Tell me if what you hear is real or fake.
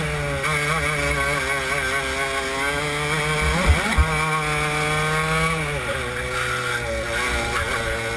real